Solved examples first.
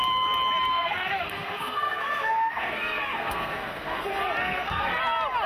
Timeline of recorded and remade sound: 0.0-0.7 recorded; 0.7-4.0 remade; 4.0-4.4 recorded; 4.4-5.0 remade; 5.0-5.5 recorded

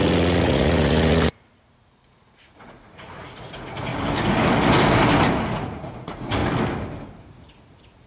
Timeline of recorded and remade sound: 0.0-3.9 remade; 3.9-5.4 recorded; 5.4-6.4 remade; 6.4-7.2 recorded; 7.2-8.1 remade

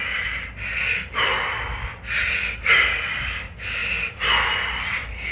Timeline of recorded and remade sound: 0.0-5.3 recorded

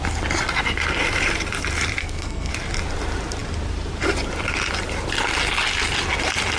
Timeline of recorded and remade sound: 0.0-2.0 recorded; 2.0-2.5 remade; 2.5-6.6 recorded